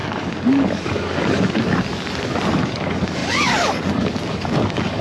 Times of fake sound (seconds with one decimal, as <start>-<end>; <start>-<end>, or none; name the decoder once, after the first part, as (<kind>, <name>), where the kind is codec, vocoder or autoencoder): 0.0-1.6 (codec, DAC); 2.5-5.0